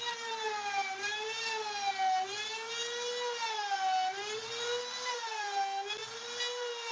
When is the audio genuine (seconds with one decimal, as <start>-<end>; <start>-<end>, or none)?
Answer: 0.0-6.9